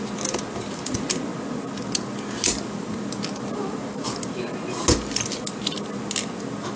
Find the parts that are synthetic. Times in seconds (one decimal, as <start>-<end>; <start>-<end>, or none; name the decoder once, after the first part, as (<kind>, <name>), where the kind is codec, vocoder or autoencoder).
none